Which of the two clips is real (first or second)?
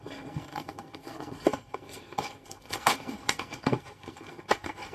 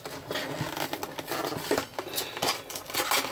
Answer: second